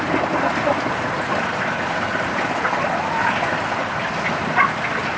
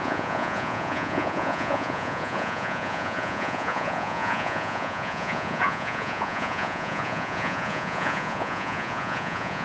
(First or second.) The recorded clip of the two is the first